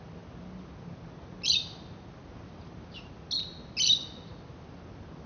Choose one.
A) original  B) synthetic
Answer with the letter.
A